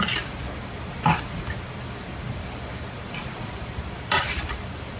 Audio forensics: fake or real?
fake